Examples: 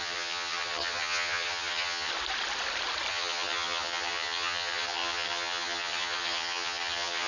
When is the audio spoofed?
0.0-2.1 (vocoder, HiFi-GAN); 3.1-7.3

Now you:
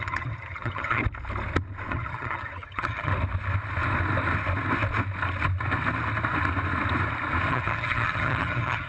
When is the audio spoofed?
0.0-1.0 (vocoder, HiFi-GAN); 1.9-3.1; 7.5-8.9